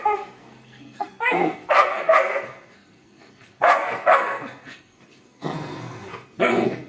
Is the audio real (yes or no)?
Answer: no